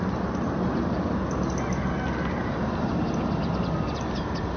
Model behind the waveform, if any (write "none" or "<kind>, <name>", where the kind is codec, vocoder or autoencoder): none